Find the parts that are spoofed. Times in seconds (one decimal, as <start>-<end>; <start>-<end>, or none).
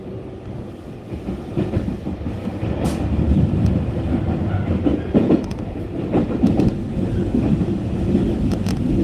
4.9-5.4